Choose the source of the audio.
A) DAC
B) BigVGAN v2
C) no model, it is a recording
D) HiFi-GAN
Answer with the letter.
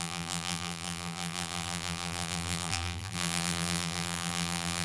B